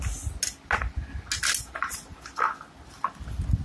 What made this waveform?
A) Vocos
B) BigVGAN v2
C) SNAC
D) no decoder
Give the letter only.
D